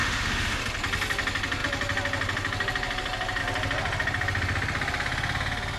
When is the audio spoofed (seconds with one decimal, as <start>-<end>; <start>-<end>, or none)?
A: 0.0-0.6